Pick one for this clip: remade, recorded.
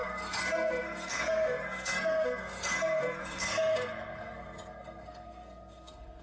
remade